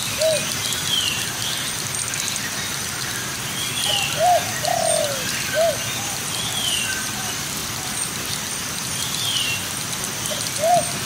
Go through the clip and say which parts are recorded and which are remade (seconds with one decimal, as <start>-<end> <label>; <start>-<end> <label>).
0.0-11.1 recorded